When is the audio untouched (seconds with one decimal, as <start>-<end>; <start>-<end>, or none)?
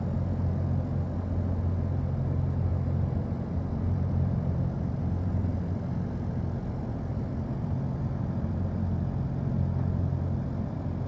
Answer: 0.0-2.7; 6.4-7.1; 8.1-11.1